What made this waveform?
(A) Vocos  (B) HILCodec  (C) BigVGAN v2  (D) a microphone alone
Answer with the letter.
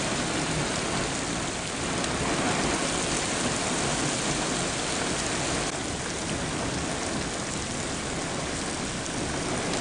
D